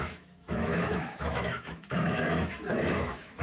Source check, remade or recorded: remade